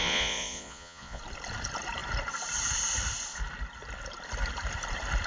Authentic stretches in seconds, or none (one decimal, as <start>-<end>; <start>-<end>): 1.2-5.3